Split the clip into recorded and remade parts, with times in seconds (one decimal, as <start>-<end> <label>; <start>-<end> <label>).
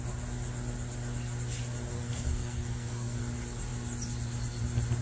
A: 0.0-1.9 recorded; 1.9-3.2 remade; 3.2-5.0 recorded